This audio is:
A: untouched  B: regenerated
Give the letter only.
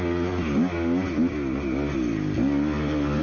A